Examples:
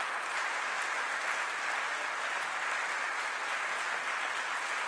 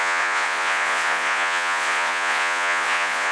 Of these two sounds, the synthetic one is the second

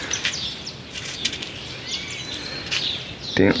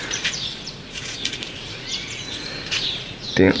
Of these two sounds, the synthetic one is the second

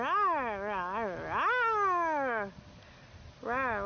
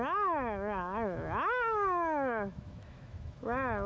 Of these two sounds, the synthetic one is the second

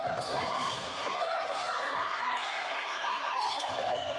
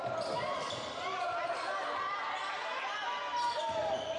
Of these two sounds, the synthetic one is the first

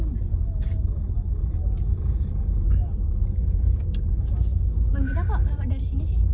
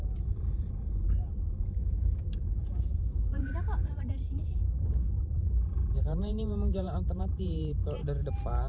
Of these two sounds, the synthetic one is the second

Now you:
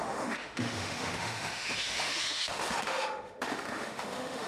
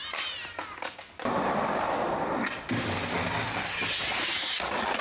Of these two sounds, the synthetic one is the first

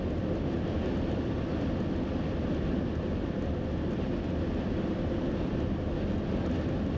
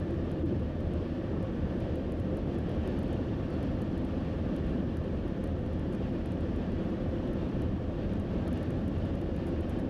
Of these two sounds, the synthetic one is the second